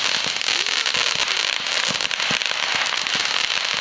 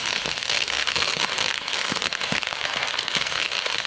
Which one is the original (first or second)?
first